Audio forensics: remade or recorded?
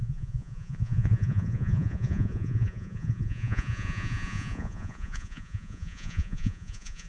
remade